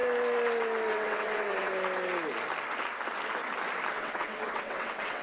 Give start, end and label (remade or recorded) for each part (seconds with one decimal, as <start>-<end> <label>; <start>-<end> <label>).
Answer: 0.0-0.9 recorded; 0.9-1.7 remade; 1.7-3.9 recorded; 3.9-5.2 remade